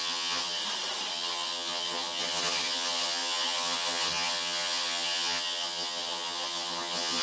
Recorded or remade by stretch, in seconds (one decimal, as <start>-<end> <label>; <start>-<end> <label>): 0.0-0.6 remade; 0.6-1.1 recorded; 1.1-7.2 remade